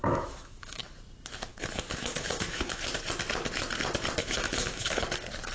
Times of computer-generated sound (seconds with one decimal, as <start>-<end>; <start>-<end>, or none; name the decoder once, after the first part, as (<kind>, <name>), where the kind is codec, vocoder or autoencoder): 0.0-0.8 (autoencoder, DAC-VAE); 1.5-2.9; 4.2-5.0